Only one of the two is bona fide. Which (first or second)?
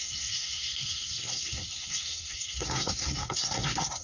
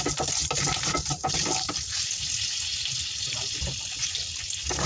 second